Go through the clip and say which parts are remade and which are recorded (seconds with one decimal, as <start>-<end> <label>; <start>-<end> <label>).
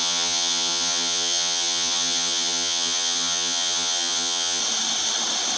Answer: 0.0-4.6 remade; 4.6-5.6 recorded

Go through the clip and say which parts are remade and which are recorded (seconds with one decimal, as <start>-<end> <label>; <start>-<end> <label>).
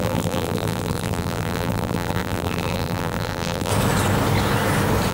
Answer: 0.0-3.7 remade; 3.7-5.1 recorded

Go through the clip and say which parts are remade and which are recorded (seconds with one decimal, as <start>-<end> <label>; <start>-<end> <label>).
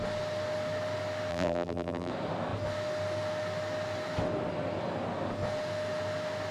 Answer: 0.0-1.3 recorded; 1.3-2.1 remade; 2.1-6.5 recorded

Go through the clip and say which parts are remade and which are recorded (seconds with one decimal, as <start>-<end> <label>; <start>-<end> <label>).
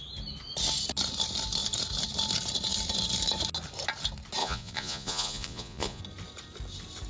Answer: 0.0-4.4 recorded; 4.4-6.0 remade; 6.0-7.1 recorded